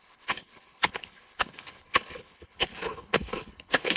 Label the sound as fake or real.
fake